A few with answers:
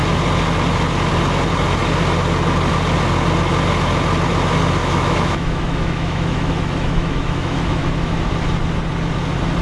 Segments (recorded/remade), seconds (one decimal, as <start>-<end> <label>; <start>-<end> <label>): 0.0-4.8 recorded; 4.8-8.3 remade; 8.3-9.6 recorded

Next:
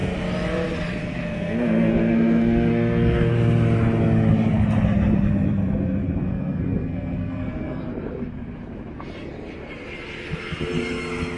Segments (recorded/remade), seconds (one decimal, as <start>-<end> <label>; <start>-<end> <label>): 0.0-1.0 recorded; 1.0-3.3 remade; 3.3-6.2 recorded; 6.2-7.8 remade; 7.8-11.4 recorded

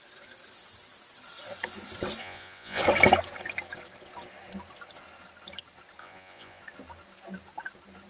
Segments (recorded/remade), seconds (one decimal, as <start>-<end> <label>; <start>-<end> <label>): 0.0-2.2 recorded; 2.2-2.8 remade; 2.8-6.0 recorded; 6.0-6.6 remade; 6.6-8.1 recorded

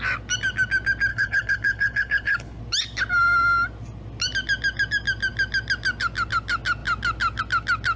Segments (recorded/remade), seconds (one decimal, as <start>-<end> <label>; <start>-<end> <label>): 0.0-1.1 recorded; 1.1-2.6 remade; 2.6-8.0 recorded

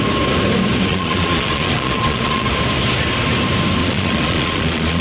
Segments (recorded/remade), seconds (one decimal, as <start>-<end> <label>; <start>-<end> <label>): 0.0-0.9 recorded; 0.9-2.5 remade; 2.5-3.8 recorded; 3.8-5.0 remade